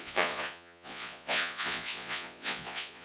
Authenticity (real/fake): fake